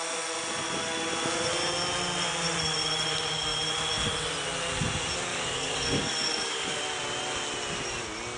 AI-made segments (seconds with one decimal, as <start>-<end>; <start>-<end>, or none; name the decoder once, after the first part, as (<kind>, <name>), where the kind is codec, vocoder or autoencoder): 5.3-6.8 (codec, DAC)